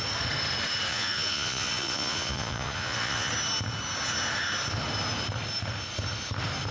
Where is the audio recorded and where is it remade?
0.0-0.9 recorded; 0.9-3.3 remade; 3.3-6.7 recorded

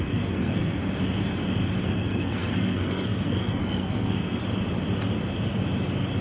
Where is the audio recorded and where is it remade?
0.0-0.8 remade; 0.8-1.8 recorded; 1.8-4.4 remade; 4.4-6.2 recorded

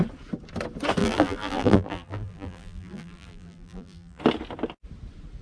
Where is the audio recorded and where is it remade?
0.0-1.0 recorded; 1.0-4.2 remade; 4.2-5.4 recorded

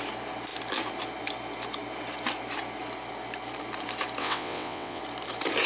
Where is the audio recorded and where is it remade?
0.0-4.2 recorded; 4.2-5.0 remade; 5.0-5.7 recorded